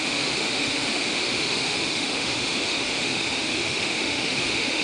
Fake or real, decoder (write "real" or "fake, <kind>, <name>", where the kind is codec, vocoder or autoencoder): fake, autoencoder, DAC-VAE